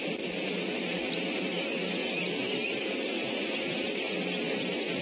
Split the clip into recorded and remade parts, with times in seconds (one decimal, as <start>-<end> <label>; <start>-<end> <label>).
0.0-5.0 remade